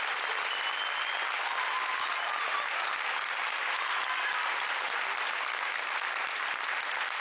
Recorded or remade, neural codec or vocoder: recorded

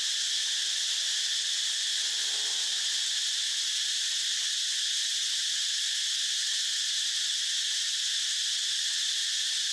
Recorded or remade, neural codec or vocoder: recorded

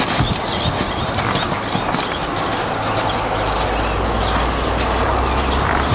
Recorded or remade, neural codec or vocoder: recorded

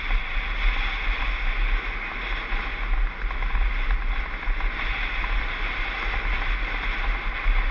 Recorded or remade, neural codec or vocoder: recorded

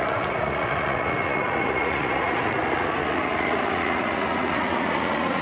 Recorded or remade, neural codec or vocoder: remade, vocoder, Vocos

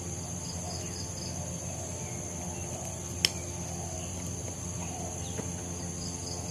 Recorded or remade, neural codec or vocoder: recorded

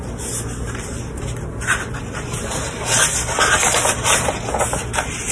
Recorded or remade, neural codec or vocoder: recorded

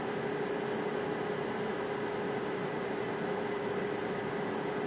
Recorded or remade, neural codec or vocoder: recorded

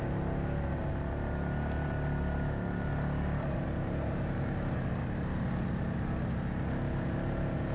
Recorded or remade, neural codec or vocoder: recorded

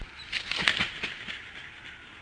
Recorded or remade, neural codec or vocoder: recorded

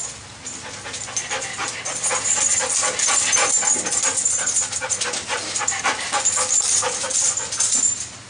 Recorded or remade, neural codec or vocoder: recorded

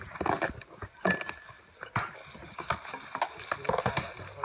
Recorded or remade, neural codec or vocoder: recorded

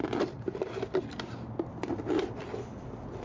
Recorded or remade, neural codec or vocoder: recorded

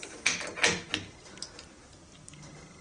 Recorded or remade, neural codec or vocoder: recorded